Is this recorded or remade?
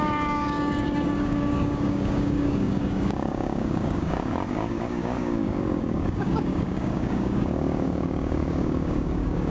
remade